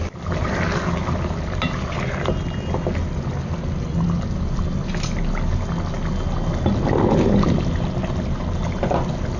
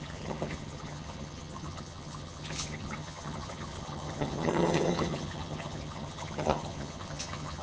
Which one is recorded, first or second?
first